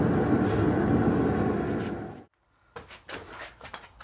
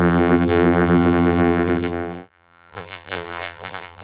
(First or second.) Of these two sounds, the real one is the first